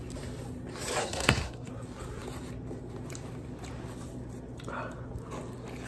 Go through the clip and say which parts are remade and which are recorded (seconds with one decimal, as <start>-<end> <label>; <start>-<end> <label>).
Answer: 0.0-1.0 recorded; 1.0-1.7 remade; 1.7-5.9 recorded